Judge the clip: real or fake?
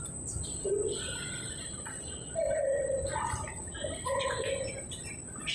real